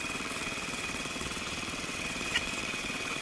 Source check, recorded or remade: remade